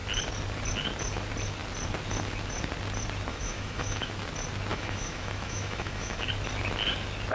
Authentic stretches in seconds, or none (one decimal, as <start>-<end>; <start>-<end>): 0.0-3.3; 4.1-4.7; 6.3-7.3

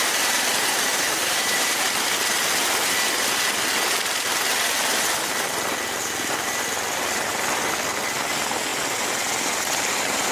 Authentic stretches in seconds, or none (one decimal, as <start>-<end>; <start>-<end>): 0.0-0.5; 1.9-10.3

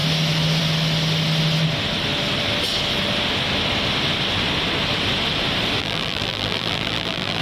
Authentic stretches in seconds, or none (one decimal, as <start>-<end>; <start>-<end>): 0.0-5.8

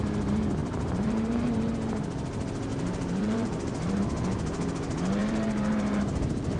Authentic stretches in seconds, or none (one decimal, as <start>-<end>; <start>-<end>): 0.0-0.6; 1.7-2.7; 4.0-5.2

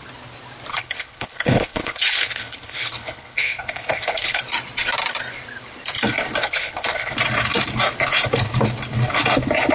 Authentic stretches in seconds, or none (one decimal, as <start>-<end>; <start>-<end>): 0.0-0.7; 4.4-6.4; 7.1-9.7

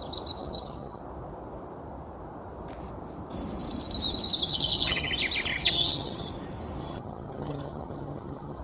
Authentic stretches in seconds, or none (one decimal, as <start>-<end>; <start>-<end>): 0.0-0.4; 1.0-4.5; 5.1-5.5; 6.3-6.8